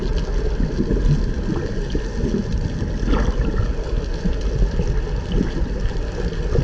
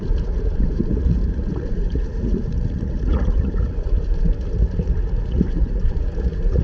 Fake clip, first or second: second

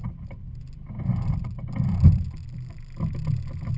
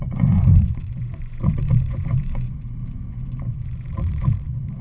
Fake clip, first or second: second